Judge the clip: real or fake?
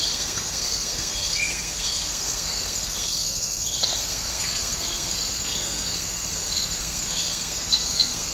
fake